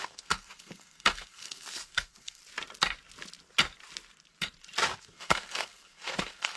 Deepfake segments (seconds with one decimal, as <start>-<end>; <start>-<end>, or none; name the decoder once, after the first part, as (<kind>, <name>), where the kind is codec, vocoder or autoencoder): 0.0-2.4 (codec, SNAC); 5.0-6.6